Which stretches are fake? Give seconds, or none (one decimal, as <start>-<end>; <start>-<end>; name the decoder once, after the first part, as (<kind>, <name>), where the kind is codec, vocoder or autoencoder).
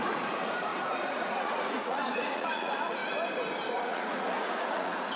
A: 0.0-3.0 (vocoder, Vocos); 3.8-5.2